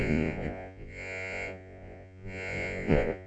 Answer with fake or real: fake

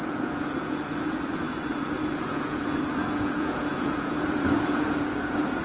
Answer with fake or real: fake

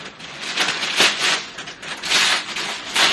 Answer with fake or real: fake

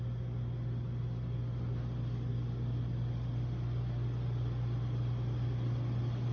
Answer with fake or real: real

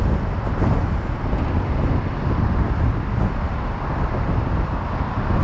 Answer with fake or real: real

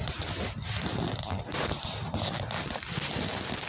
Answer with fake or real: real